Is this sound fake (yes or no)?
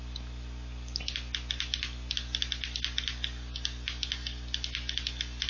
no